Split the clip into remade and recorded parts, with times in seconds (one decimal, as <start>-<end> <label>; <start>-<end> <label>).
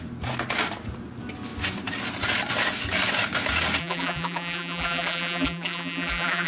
0.0-3.8 recorded; 3.8-6.5 remade